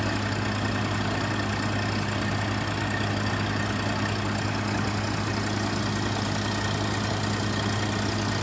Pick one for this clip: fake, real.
real